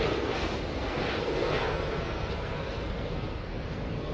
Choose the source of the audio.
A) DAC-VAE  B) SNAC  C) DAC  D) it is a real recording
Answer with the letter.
B